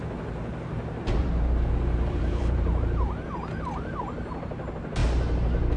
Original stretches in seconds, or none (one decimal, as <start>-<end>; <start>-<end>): 0.0-0.5; 4.0-5.8